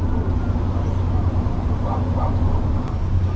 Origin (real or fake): real